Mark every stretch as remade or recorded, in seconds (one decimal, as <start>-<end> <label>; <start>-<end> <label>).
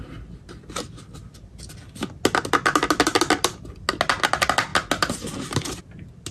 0.0-6.3 recorded